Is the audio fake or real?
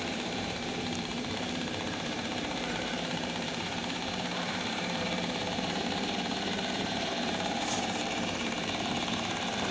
fake